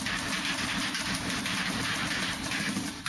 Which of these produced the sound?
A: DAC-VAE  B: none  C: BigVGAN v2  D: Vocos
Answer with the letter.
B